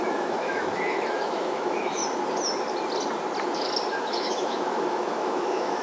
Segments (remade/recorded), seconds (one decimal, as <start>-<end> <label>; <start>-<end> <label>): 0.0-2.0 remade; 2.0-3.9 recorded; 3.9-5.8 remade